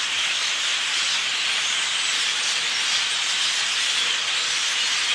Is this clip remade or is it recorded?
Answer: remade